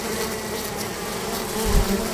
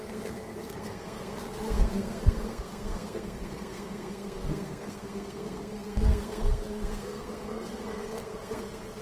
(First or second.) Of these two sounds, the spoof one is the second